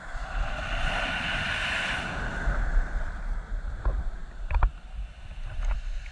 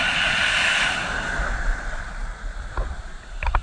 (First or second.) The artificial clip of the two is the second